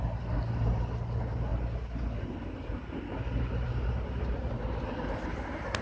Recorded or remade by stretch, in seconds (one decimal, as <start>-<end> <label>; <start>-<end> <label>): 0.0-5.8 recorded